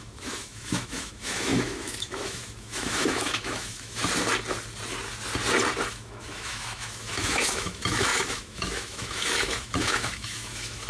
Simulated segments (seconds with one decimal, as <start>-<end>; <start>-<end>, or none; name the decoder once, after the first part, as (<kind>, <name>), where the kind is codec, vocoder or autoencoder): 0.0-4.0 (autoencoder, DAC-VAE); 5.9-10.9